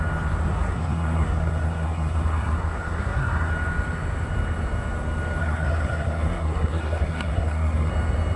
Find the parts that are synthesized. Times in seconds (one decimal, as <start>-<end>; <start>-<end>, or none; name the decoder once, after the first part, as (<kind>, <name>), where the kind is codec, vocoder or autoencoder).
0.5-3.5 (codec, SNAC); 5.4-7.9